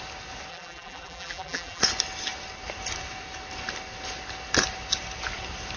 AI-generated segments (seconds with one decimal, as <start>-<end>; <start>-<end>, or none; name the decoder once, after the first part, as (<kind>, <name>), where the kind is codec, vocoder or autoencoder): 0.5-1.8 (vocoder, BigVGAN v2)